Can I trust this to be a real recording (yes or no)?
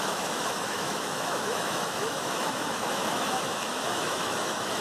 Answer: no